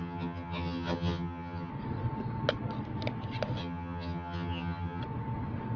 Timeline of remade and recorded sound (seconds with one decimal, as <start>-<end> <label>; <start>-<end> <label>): 0.0-1.7 remade; 1.7-3.6 recorded; 3.6-5.0 remade; 5.0-5.8 recorded